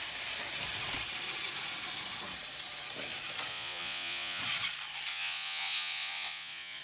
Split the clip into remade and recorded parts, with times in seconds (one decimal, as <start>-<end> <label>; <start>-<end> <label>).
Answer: 0.0-3.5 recorded; 3.5-4.4 remade; 4.4-5.1 recorded; 5.1-6.8 remade